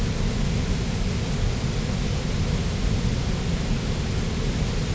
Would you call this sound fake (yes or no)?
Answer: no